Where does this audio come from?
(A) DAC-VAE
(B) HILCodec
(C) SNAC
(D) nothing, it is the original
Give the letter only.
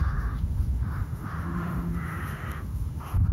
A